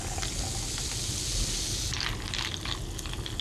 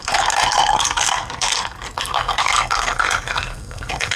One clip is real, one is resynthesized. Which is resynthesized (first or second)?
second